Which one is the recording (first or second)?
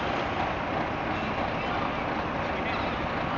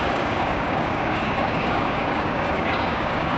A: first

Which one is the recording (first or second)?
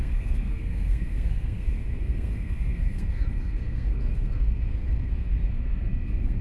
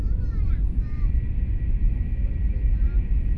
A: second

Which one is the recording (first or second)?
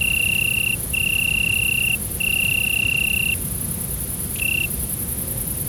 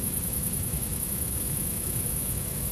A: first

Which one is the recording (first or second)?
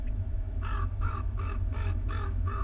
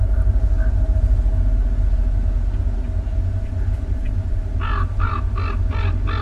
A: second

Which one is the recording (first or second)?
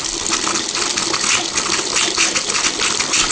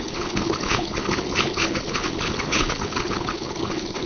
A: first